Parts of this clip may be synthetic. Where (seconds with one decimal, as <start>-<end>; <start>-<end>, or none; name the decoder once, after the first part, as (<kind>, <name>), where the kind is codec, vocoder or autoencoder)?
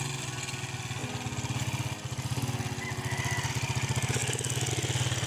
none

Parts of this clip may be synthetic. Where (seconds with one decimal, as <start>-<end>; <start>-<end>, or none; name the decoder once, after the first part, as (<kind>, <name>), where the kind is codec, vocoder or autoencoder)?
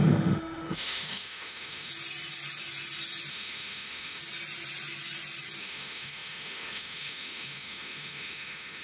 0.0-1.9 (autoencoder, DAC-VAE); 3.3-4.2; 5.6-8.8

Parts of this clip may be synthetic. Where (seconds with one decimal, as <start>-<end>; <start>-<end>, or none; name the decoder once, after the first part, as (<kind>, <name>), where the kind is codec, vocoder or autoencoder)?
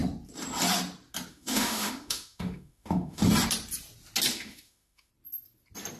1.3-3.2 (autoencoder, DAC-VAE); 4.3-5.1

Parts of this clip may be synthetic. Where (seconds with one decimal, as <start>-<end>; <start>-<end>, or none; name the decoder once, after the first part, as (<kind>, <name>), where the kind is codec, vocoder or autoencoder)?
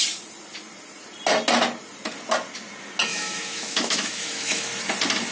3.1-4.7 (autoencoder, DAC-VAE)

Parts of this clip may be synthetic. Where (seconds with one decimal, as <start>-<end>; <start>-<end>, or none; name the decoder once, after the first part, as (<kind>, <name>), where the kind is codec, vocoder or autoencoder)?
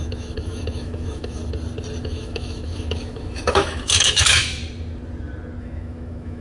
0.0-1.4 (autoencoder, DAC-VAE); 2.0-4.6; 5.6-6.4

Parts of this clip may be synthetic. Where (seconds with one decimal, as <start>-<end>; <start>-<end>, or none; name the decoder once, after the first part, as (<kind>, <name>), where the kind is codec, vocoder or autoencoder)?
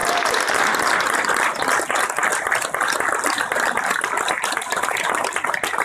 none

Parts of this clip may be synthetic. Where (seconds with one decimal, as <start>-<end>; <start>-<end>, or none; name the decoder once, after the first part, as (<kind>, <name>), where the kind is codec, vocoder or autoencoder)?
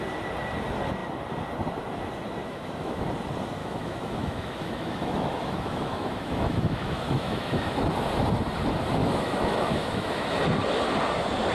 2.4-3.1 (autoencoder, DAC-VAE); 3.6-7.9; 9.0-10.4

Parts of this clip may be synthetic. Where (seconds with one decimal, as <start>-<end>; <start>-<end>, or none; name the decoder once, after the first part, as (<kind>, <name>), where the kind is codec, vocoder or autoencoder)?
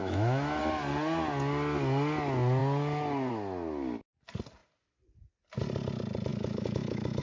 0.0-0.6 (autoencoder, DAC-VAE); 6.3-7.2